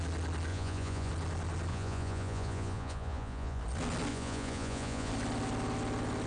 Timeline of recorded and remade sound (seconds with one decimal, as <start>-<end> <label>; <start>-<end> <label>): 0.0-0.5 recorded; 0.5-1.1 remade; 1.1-1.7 recorded; 1.7-3.6 remade; 3.6-4.1 recorded; 4.1-5.1 remade; 5.1-6.3 recorded